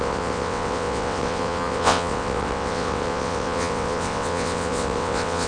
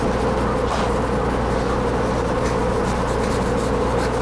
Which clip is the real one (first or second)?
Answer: second